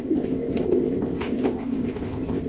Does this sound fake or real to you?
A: fake